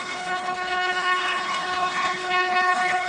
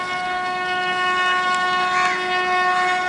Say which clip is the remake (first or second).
first